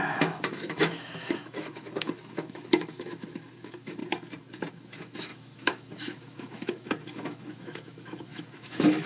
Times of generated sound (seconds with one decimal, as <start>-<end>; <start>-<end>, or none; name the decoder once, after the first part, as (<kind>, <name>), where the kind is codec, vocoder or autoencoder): 0.0-4.0 (autoencoder, DAC-VAE); 4.7-9.1